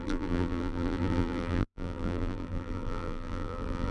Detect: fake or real fake